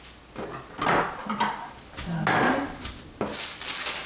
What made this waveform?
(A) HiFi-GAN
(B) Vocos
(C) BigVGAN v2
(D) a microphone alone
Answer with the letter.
D